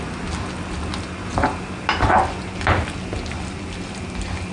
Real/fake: real